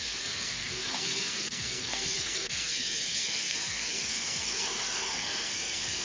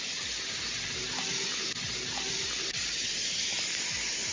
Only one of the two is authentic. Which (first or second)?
second